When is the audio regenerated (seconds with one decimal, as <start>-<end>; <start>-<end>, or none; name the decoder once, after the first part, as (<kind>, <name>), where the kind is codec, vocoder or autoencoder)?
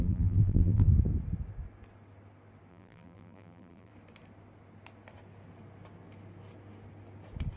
0.0-0.9 (vocoder, BigVGAN v2); 2.7-3.9